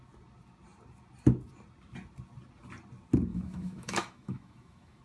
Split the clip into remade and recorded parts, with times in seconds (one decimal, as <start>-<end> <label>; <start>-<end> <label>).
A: 0.0-3.3 recorded; 3.3-5.0 remade